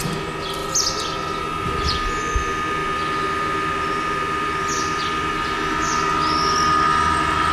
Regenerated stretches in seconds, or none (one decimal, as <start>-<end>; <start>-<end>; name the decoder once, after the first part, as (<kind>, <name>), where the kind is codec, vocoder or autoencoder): none